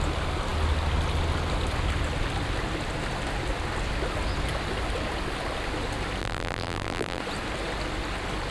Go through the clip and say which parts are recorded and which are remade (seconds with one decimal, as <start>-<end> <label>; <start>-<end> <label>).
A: 0.0-6.2 recorded; 6.2-7.2 remade; 7.2-8.5 recorded